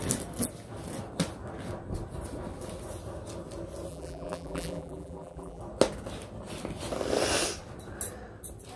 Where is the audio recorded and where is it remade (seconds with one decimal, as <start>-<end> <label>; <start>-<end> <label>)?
0.0-3.9 recorded; 3.9-5.6 remade; 5.6-8.8 recorded